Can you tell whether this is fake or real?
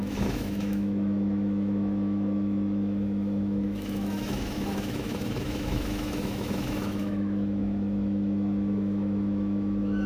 fake